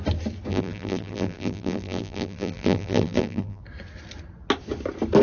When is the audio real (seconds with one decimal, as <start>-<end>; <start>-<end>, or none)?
0.0-0.5; 3.6-5.2